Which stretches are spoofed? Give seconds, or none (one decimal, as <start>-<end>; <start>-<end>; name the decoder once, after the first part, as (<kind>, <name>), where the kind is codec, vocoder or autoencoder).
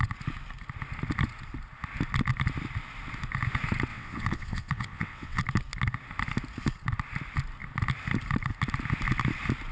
3.9-5.4 (vocoder, WaveNeXt)